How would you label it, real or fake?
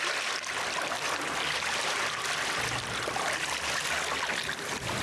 real